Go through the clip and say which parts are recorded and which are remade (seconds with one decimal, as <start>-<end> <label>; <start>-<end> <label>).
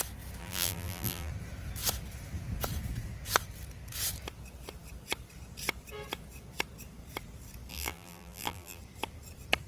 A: 0.0-0.4 recorded; 0.4-1.3 remade; 1.3-7.7 recorded; 7.7-8.8 remade; 8.8-9.7 recorded